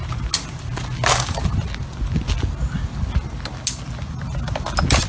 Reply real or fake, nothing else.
real